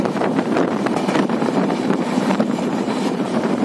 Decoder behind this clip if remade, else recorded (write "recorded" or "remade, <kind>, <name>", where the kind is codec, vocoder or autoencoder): remade, vocoder, BigVGAN v2